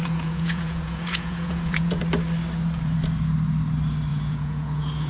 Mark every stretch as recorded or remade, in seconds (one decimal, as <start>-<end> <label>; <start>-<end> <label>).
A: 0.0-2.0 remade; 2.0-4.1 recorded; 4.1-5.1 remade